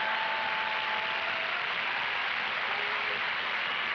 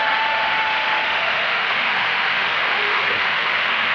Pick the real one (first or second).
first